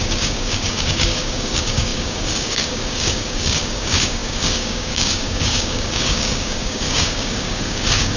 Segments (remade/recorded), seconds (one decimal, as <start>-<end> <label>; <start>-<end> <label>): 0.0-8.2 remade

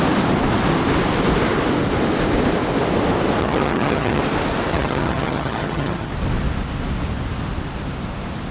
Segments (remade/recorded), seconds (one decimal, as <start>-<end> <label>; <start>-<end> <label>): 0.0-3.4 recorded; 3.4-4.2 remade; 4.2-4.7 recorded; 4.7-6.1 remade; 6.1-8.5 recorded

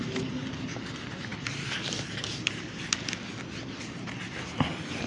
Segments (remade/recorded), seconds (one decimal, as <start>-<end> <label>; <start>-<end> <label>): 0.0-5.1 recorded

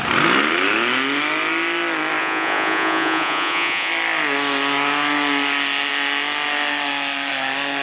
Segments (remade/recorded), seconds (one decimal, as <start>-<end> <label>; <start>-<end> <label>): 0.0-2.2 recorded; 2.2-3.9 remade; 3.9-7.8 recorded

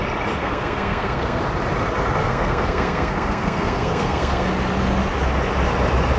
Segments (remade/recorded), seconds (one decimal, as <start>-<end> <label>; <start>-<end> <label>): 0.0-0.4 recorded; 0.4-1.4 remade; 1.4-2.2 recorded; 2.2-4.5 remade; 4.5-6.2 recorded

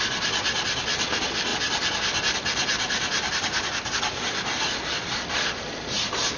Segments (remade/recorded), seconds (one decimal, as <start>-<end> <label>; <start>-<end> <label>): 0.0-6.4 recorded

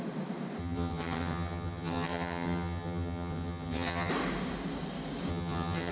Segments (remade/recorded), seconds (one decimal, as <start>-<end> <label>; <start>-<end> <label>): 0.0-0.6 recorded; 0.6-4.1 remade; 4.1-5.3 recorded; 5.3-5.9 remade

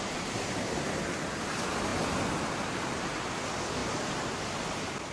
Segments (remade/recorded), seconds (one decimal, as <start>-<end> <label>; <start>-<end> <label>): 0.0-5.1 recorded